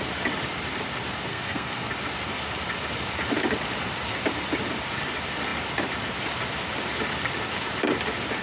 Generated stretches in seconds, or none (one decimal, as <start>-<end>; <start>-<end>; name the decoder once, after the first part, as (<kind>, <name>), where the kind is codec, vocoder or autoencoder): 1.3-1.9 (codec, SNAC)

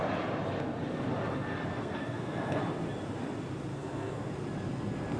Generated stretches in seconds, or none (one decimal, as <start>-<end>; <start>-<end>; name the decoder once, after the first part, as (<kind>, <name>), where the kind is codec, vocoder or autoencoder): 1.7-2.6 (codec, SNAC); 3.7-4.3

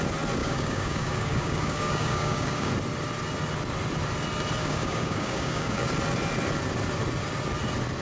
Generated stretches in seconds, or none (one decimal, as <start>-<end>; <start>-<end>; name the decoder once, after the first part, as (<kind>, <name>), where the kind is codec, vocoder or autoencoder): 0.4-2.7 (codec, DAC); 4.6-5.9